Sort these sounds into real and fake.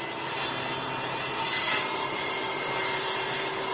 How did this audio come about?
real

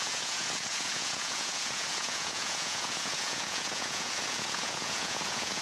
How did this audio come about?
fake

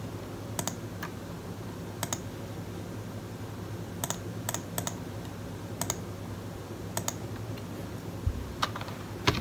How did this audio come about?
real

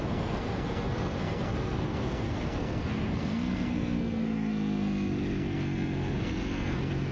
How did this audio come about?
fake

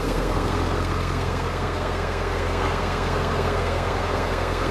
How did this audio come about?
fake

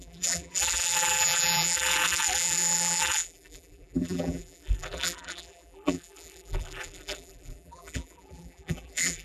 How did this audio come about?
fake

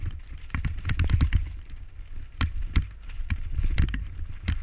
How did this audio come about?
real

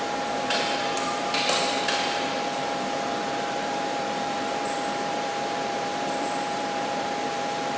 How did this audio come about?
fake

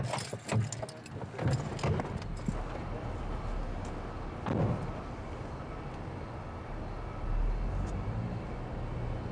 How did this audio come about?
real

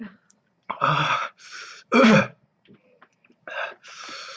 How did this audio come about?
fake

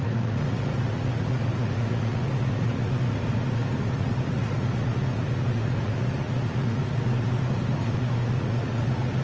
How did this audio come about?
fake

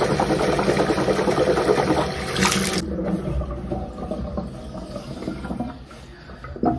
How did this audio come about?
real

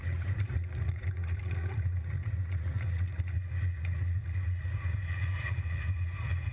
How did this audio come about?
fake